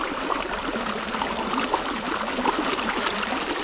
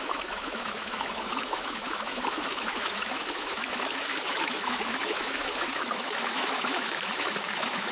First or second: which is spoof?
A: second